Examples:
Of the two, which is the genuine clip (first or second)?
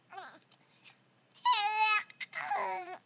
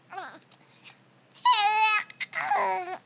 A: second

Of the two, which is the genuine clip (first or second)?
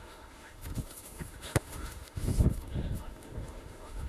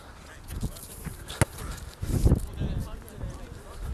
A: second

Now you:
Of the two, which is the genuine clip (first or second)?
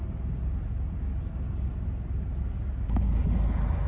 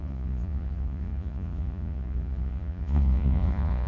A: first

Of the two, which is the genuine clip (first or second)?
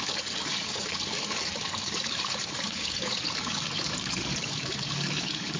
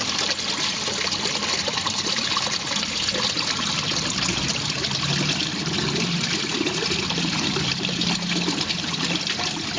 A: second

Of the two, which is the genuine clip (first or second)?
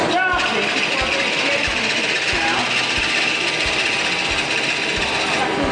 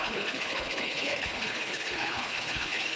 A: first